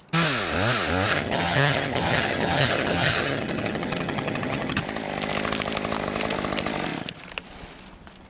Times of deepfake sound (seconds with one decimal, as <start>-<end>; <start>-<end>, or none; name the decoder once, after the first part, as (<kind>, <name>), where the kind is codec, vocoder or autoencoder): 1.1-4.8 (vocoder, HiFi-GAN)